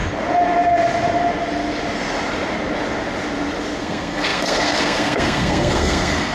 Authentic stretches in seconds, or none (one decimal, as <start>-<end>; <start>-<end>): 0.0-3.8

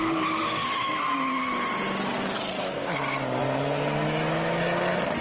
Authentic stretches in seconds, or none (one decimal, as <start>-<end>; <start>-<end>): 0.0-5.2

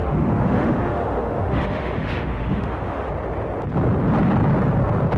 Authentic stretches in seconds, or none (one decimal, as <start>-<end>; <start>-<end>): 3.1-5.2

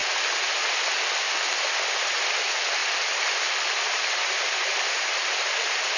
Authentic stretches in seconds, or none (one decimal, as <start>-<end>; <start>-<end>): 0.0-6.0

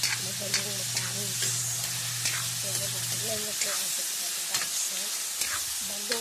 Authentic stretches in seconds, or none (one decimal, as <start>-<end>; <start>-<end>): 0.0-6.2

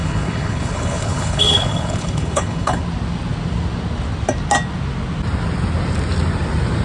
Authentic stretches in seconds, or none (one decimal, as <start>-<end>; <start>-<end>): 2.8-6.8

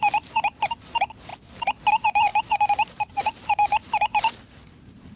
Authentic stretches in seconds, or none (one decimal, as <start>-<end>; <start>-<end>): 1.3-1.9

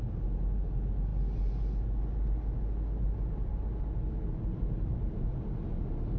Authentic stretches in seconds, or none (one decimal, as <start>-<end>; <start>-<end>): 0.0-6.2